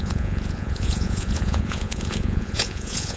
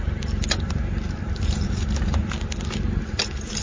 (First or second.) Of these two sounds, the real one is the second